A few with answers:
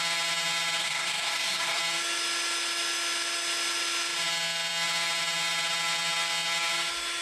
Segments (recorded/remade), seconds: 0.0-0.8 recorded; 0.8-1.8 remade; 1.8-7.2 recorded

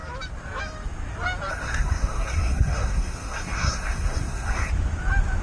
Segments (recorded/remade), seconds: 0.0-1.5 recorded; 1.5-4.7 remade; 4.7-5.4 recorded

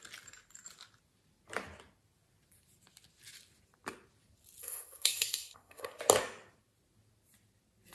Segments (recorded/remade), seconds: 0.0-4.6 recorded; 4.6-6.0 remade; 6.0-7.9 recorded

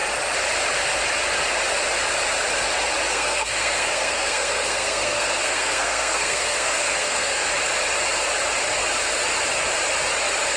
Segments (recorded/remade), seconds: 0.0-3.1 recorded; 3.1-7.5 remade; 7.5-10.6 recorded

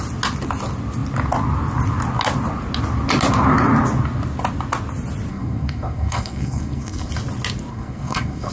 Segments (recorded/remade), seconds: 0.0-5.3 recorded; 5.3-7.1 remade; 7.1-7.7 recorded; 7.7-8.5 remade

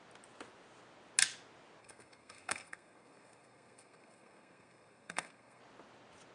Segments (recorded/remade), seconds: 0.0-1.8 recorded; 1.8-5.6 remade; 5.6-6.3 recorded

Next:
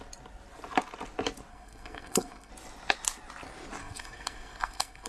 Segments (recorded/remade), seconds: 0.0-1.5 recorded; 1.5-2.5 remade; 2.5-3.8 recorded; 3.8-5.1 remade